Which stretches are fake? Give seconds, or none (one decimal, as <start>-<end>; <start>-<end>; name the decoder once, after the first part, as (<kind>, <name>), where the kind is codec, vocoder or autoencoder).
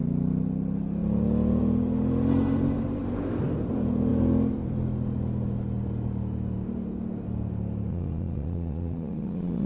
7.9-9.7 (vocoder, Vocos)